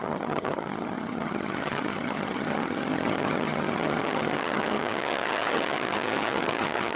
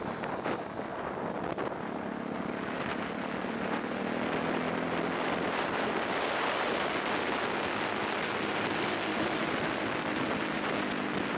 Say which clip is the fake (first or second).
first